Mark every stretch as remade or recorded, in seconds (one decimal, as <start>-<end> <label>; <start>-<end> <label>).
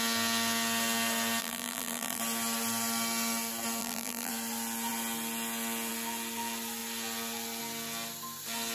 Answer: 0.0-1.4 recorded; 1.4-2.2 remade; 2.2-3.8 recorded; 3.8-4.3 remade; 4.3-8.7 recorded